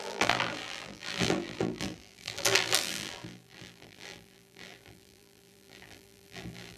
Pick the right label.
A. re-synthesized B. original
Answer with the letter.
A